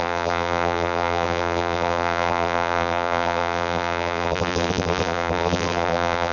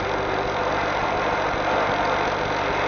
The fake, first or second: first